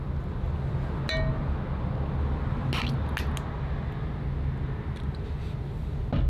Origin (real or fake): real